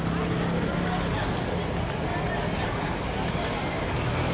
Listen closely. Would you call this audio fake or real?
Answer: real